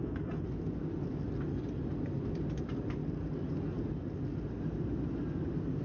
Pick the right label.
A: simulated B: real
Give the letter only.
B